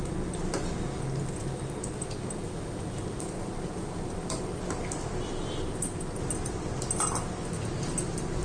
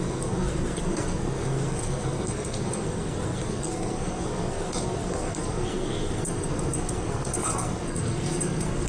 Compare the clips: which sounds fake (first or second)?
second